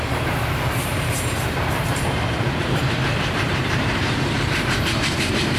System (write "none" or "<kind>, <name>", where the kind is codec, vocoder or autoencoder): vocoder, BigVGAN v2